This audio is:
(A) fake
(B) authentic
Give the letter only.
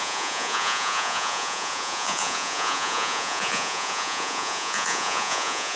A